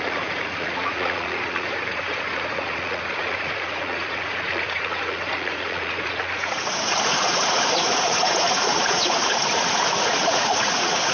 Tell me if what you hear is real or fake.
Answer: fake